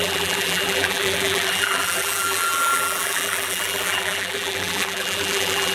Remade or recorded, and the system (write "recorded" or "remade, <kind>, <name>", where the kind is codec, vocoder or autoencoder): remade, vocoder, BigVGAN v2